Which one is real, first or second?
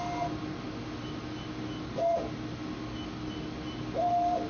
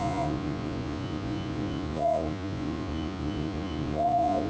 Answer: first